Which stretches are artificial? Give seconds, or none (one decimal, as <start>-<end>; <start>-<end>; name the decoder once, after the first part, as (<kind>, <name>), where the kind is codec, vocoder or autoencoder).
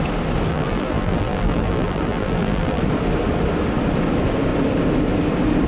0.5-2.8 (vocoder, BigVGAN v2)